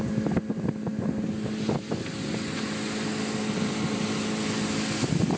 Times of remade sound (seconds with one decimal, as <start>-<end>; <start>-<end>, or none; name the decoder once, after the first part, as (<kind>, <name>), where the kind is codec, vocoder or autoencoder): none